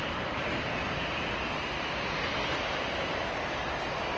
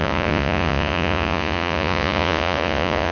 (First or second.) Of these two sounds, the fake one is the second